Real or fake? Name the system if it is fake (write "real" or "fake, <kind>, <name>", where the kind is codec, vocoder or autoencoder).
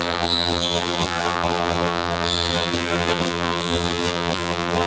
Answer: fake, vocoder, BigVGAN v2